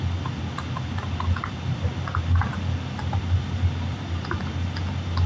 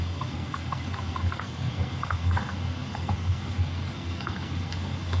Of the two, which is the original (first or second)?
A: first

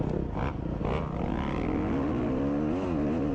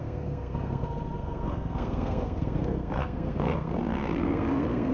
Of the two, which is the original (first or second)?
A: first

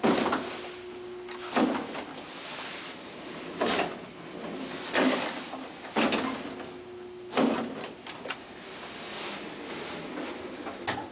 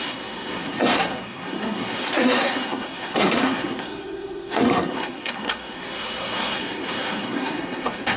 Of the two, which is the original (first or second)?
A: first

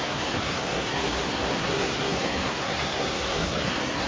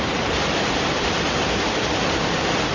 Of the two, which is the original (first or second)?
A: second